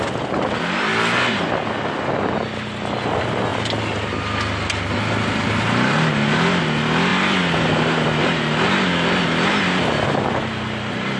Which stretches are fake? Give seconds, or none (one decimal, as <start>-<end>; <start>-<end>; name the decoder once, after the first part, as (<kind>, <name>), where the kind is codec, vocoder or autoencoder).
none